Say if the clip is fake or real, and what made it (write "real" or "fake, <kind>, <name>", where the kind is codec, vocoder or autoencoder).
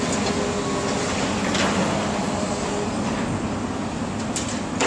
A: real